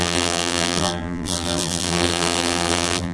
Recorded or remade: remade